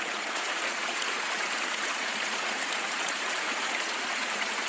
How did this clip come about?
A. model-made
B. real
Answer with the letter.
A